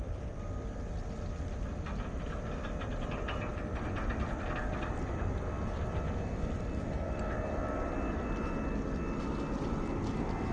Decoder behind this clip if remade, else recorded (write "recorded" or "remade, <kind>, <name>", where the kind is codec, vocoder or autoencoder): recorded